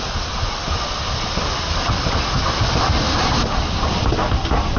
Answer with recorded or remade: recorded